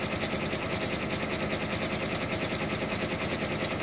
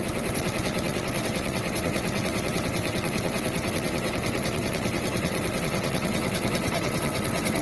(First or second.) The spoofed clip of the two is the second